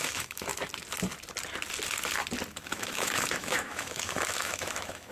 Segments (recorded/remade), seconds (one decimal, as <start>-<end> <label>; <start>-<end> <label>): 0.0-0.5 remade; 0.5-2.5 recorded; 2.5-5.1 remade